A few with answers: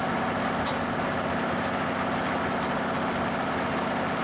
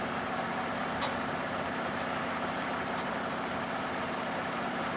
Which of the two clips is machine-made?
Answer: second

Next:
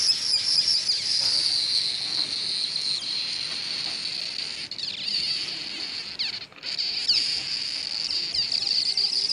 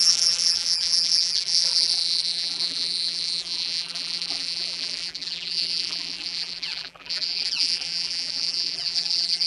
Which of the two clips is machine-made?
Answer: second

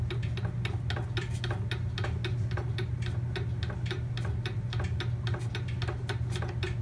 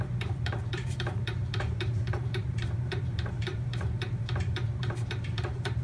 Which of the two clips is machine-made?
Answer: second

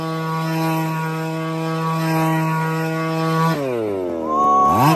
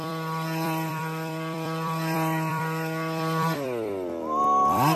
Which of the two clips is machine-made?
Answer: second